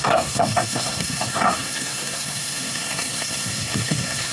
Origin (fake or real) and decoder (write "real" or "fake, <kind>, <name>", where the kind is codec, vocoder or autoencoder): fake, codec, SNAC